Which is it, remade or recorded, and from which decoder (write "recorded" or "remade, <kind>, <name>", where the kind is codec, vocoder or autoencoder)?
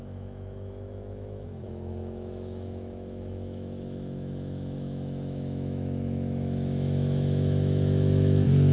remade, autoencoder, DAC-VAE